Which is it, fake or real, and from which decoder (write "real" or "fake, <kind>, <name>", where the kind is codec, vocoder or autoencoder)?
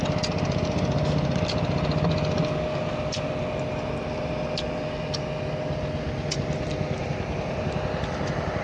real